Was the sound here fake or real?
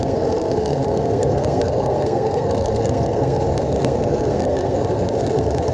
fake